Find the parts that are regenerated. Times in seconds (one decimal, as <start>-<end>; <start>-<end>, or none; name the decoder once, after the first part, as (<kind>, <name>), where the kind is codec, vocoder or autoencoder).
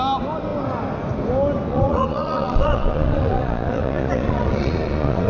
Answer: 1.7-5.3 (vocoder, Vocos)